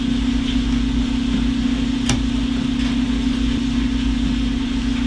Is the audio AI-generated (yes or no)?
no